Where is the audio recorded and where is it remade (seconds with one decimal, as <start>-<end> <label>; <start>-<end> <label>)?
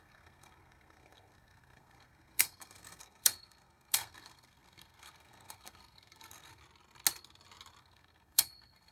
0.0-6.6 remade; 6.6-7.8 recorded; 7.8-8.9 remade